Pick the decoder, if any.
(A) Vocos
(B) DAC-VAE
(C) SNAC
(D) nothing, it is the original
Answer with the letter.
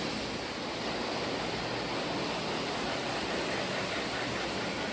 D